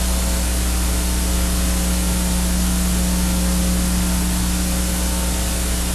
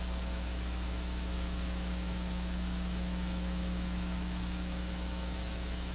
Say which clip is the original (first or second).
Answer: first